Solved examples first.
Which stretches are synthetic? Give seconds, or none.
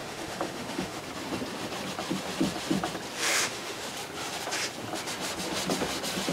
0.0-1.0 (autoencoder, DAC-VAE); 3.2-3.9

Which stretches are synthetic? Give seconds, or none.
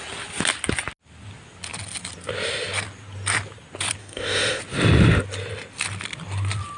4.0-4.6 (autoencoder, DAC-VAE)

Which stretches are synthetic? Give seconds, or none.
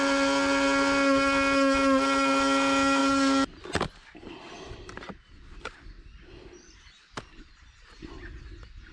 none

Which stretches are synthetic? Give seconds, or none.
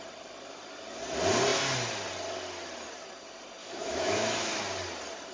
3.6-4.6 (autoencoder, DAC-VAE)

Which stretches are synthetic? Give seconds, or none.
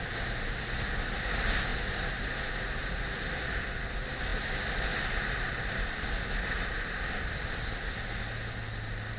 none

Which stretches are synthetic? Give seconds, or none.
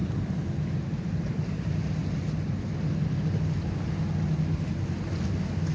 none